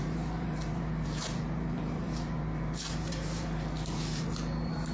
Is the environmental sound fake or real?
fake